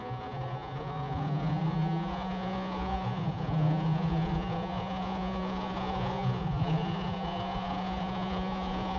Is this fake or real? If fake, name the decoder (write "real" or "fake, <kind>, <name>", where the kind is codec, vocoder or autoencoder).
fake, vocoder, Vocos